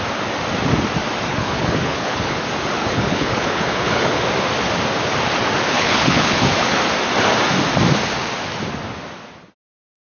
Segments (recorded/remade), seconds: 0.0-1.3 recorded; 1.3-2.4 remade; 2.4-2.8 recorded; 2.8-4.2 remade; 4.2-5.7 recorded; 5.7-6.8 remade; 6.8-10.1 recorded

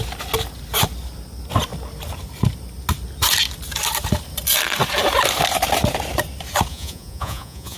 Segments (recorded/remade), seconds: 0.0-6.7 recorded; 6.7-7.8 remade

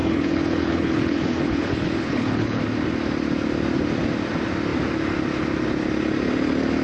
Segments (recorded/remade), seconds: 0.0-2.6 remade; 2.6-6.8 recorded

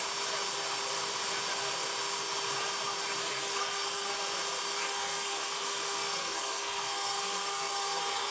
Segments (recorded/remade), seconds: 0.0-3.2 recorded; 3.2-4.1 remade; 4.1-4.8 recorded; 4.8-8.3 remade